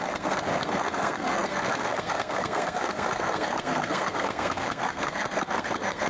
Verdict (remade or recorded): remade